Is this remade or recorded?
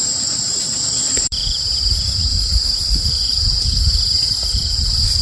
remade